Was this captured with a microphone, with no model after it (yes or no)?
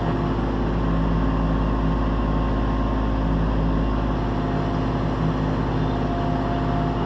yes